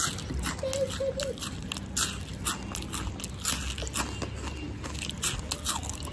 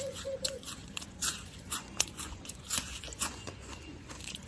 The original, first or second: first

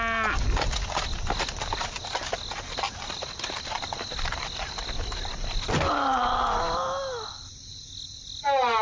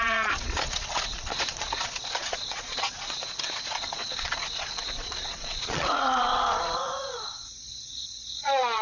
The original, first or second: first